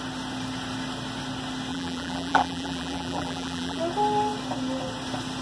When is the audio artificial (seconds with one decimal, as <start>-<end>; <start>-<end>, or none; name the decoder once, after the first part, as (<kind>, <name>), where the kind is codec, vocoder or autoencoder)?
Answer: 1.7-3.8 (vocoder, BigVGAN v2)